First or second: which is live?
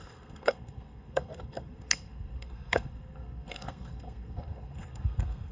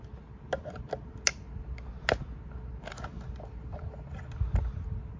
second